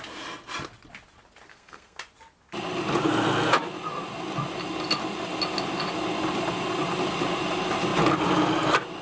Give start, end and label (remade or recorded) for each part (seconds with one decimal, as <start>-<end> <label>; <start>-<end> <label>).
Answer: 0.0-1.5 recorded; 1.5-2.0 remade; 2.0-9.0 recorded